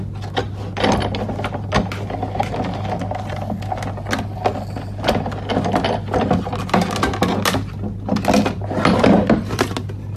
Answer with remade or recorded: recorded